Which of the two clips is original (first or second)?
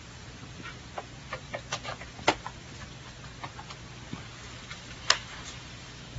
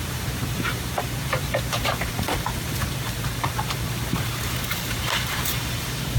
first